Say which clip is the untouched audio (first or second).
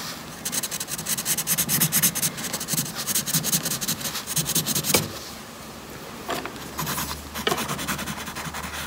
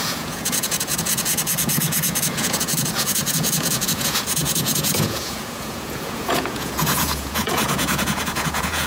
first